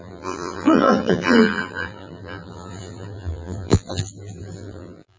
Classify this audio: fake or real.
fake